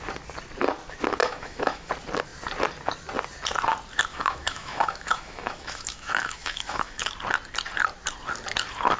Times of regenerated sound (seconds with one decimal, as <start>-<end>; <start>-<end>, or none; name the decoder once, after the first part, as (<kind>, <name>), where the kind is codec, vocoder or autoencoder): 1.2-1.9 (autoencoder, DAC-VAE); 4.1-7.1